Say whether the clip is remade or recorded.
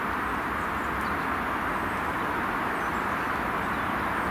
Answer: recorded